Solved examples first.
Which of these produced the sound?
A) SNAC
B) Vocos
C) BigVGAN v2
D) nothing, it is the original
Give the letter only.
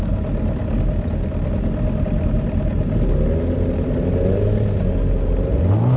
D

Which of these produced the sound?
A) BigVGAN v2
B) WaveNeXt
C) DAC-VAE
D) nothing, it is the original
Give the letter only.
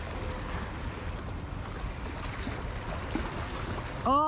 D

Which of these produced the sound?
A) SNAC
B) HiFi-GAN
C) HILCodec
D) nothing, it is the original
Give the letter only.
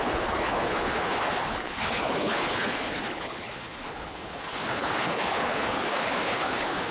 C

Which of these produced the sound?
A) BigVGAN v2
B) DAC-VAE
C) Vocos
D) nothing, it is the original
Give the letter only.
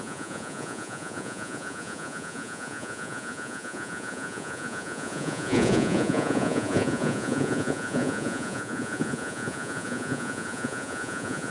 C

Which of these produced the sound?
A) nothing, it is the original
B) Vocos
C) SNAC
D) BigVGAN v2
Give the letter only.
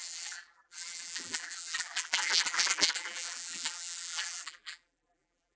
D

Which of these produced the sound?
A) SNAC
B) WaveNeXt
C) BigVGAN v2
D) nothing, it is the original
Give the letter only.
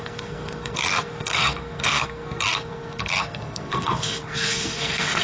A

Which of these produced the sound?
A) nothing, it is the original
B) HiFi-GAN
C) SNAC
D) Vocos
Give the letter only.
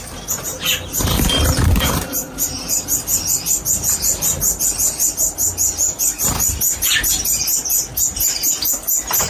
A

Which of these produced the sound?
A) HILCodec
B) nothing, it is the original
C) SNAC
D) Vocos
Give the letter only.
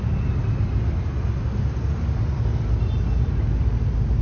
B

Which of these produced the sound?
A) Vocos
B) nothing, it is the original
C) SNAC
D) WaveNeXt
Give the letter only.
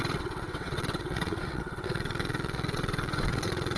D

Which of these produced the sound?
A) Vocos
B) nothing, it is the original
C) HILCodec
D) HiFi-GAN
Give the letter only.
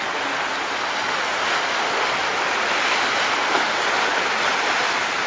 B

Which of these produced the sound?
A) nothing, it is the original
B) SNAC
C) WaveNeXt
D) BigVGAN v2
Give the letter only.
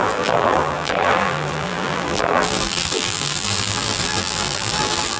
D